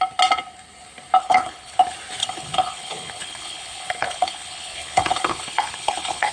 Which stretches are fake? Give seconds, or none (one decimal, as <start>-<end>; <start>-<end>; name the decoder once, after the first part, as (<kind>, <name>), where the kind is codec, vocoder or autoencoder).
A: 1.2-1.8 (codec, HILCodec); 2.2-6.3